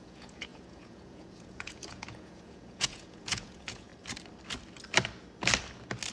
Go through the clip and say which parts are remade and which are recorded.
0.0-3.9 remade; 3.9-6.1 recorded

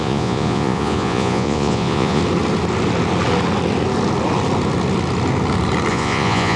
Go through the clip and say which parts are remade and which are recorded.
0.0-2.2 remade; 2.2-5.9 recorded; 5.9-6.6 remade